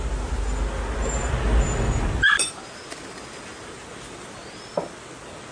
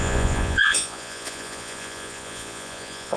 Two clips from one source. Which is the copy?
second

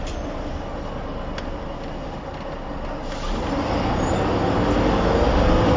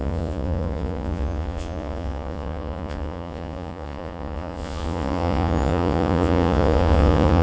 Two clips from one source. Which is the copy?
second